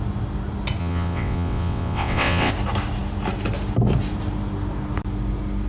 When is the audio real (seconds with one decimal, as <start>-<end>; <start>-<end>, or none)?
0.0-0.8; 2.5-5.7